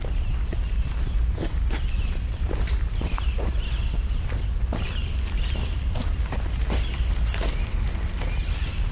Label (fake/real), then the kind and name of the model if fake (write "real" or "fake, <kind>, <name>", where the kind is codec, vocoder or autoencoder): real